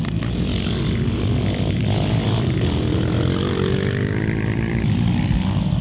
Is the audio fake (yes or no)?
no